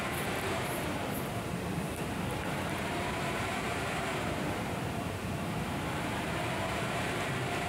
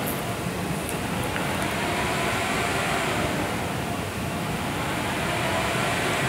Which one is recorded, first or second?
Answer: second